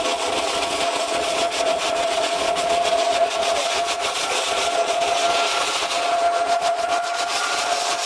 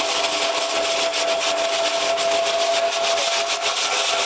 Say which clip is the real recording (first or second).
second